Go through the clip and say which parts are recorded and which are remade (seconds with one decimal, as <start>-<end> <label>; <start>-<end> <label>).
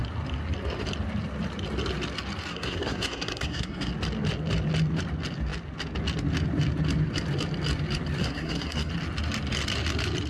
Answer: 0.0-2.5 recorded; 2.5-3.9 remade; 3.9-8.2 recorded; 8.2-8.9 remade; 8.9-10.3 recorded